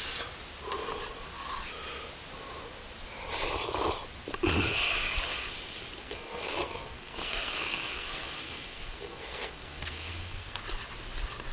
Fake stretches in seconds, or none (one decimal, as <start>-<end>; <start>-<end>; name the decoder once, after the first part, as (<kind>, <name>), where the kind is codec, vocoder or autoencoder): 6.0-10.6 (codec, SNAC)